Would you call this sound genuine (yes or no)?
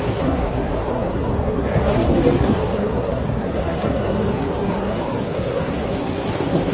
no